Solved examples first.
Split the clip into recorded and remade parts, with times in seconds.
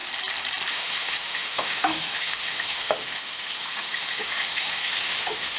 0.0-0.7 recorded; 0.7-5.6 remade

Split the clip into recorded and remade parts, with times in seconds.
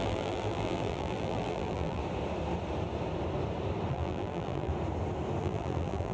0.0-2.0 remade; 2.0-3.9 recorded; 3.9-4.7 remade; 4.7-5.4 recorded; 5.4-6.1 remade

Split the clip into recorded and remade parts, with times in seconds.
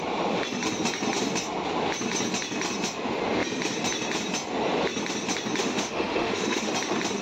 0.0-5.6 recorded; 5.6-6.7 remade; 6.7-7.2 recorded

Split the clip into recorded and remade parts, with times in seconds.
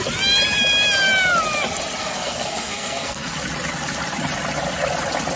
0.0-2.0 recorded; 2.0-3.3 remade; 3.3-5.4 recorded